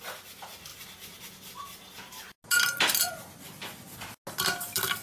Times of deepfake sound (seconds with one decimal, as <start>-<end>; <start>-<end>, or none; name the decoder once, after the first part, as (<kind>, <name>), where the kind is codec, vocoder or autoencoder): none